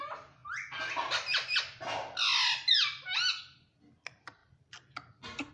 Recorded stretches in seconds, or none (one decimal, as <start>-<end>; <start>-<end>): 0.0-5.5